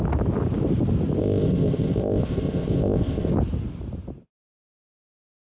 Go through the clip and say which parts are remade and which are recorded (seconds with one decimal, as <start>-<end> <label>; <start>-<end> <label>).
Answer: 0.0-1.2 recorded; 1.2-3.3 remade; 3.3-5.5 recorded

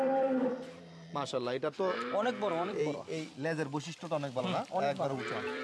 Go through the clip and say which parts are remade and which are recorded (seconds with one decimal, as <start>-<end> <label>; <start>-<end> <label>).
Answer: 0.0-1.2 remade; 1.2-2.3 recorded; 2.3-2.8 remade; 2.8-4.4 recorded; 4.4-5.6 remade

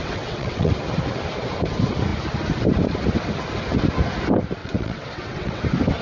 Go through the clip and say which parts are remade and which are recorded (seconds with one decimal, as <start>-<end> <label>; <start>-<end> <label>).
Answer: 0.0-0.7 remade; 0.7-4.6 recorded; 4.6-5.6 remade; 5.6-6.0 recorded

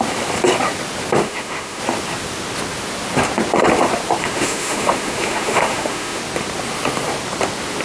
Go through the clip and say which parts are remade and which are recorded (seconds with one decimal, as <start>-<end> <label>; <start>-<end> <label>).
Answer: 0.0-1.2 recorded; 1.2-1.8 remade; 1.8-4.2 recorded; 4.2-6.2 remade; 6.2-7.8 recorded

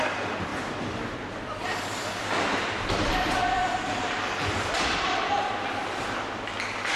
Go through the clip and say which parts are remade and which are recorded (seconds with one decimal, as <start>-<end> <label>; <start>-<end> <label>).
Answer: 0.0-0.5 recorded; 0.5-4.7 remade; 4.7-5.8 recorded; 5.8-6.4 remade; 6.4-7.0 recorded